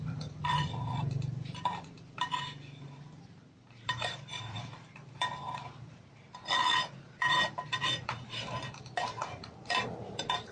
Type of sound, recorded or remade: remade